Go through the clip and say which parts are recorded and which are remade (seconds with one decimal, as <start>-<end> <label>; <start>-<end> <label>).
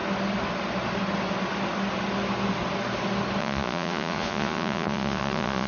0.0-3.4 recorded; 3.4-5.7 remade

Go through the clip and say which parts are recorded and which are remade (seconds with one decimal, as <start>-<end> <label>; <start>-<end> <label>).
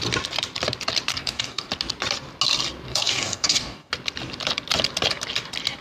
0.0-1.1 recorded; 1.1-1.7 remade; 1.7-2.9 recorded; 2.9-3.9 remade; 3.9-5.8 recorded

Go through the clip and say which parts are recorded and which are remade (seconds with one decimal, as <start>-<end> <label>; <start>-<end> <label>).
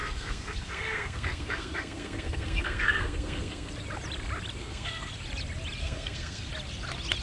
0.0-3.7 remade; 3.7-4.6 recorded; 4.6-5.1 remade; 5.1-5.8 recorded; 5.8-6.5 remade; 6.5-7.2 recorded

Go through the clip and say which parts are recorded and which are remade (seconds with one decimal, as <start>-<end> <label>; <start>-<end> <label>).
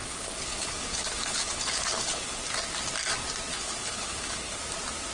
0.0-2.4 remade; 2.4-3.5 recorded; 3.5-4.6 remade; 4.6-5.1 recorded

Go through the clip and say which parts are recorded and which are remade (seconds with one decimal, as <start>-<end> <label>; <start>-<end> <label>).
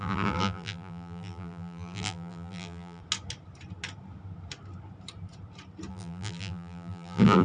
0.0-3.0 remade; 3.0-5.9 recorded; 5.9-7.4 remade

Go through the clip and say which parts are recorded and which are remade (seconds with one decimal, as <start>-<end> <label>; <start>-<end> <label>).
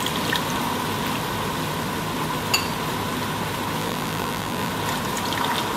0.0-3.8 recorded; 3.8-4.7 remade; 4.7-5.8 recorded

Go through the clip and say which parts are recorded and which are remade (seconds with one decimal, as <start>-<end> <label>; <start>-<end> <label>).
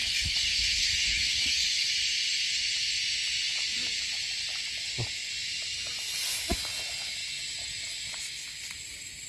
0.0-1.9 remade; 1.9-9.3 recorded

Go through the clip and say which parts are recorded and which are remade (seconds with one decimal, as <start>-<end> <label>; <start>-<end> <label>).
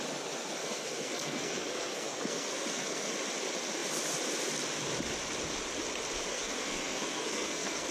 0.0-0.6 recorded; 0.6-3.1 remade; 3.1-6.3 recorded; 6.3-7.9 remade